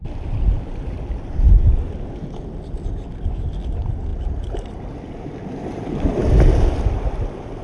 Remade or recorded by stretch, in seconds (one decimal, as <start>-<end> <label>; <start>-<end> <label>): 0.0-7.6 recorded